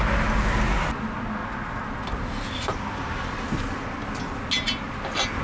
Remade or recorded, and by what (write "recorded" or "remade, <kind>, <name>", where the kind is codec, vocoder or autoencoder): recorded